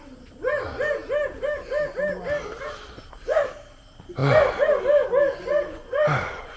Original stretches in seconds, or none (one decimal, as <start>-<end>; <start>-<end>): 0.0-5.3